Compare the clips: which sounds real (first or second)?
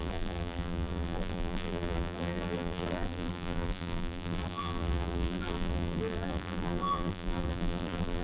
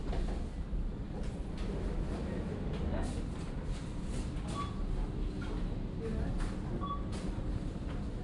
second